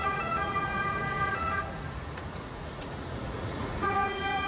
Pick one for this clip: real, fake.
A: fake